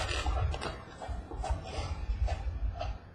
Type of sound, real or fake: real